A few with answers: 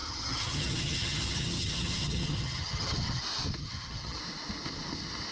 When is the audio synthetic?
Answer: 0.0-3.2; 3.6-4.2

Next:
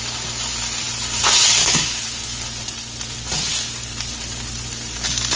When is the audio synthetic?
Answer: 1.6-2.4

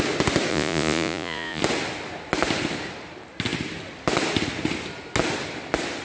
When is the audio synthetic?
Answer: 0.5-1.6

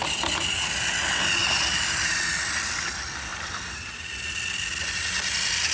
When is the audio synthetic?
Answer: 1.4-2.1; 3.3-4.5

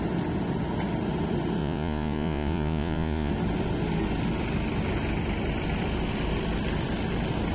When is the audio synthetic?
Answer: 1.6-3.3

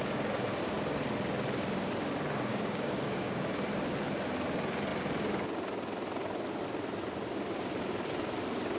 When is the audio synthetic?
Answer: 2.5-3.4